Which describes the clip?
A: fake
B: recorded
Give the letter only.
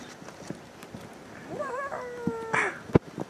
B